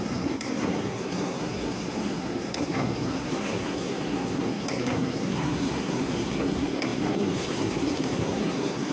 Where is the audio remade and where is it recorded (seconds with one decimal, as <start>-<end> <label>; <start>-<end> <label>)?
0.0-8.9 remade